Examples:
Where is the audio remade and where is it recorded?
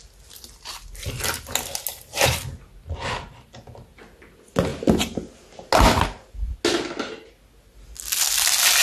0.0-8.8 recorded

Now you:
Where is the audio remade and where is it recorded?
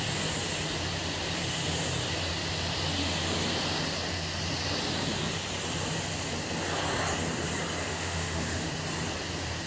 0.0-7.9 recorded; 7.9-8.7 remade; 8.7-9.7 recorded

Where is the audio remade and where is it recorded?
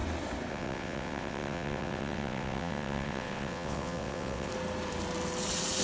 0.0-0.5 recorded; 0.5-4.5 remade; 4.5-5.8 recorded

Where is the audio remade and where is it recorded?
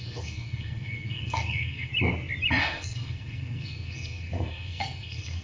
0.0-1.9 remade; 1.9-2.6 recorded; 2.6-5.4 remade